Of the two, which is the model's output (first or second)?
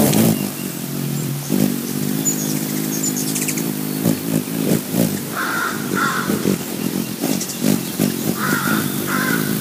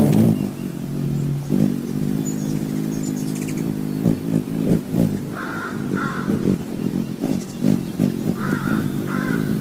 first